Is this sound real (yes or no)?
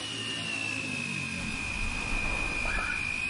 yes